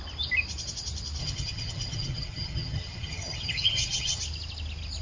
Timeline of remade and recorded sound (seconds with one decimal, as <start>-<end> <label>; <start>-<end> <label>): 0.0-1.2 recorded; 1.2-4.2 remade; 4.2-5.0 recorded